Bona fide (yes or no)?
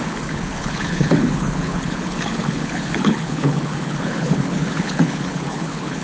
no